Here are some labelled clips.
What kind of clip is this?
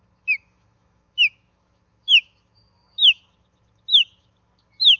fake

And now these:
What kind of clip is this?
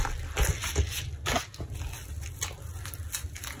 real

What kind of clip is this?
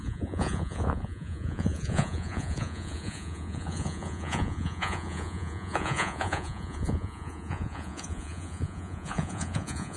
fake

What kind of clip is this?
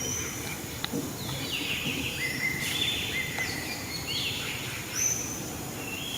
fake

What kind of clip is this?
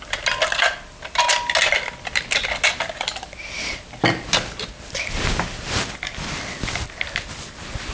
real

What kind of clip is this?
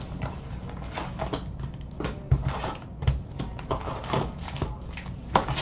real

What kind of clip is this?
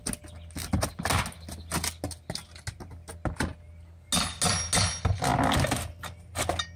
real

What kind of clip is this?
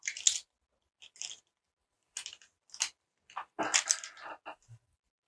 real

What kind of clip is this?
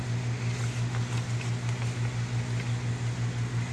real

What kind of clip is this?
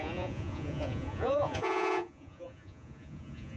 fake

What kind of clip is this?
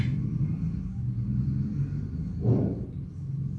real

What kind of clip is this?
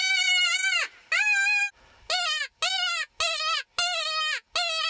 real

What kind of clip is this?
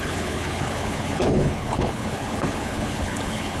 fake